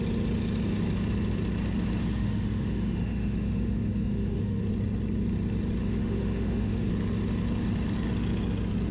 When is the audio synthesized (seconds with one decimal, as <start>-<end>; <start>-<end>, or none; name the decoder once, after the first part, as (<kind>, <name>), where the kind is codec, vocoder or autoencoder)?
2.0-4.6 (autoencoder, DAC-VAE); 5.8-6.9